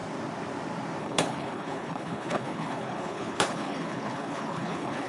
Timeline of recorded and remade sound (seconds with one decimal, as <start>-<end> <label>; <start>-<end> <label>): 0.0-1.0 recorded; 1.0-5.1 remade